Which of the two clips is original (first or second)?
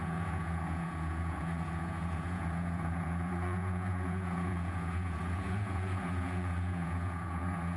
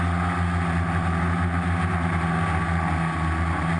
second